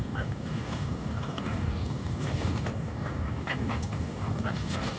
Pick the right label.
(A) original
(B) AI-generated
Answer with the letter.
B